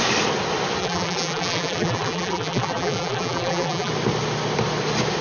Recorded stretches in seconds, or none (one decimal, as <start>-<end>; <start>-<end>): 0.0-0.8; 3.9-5.2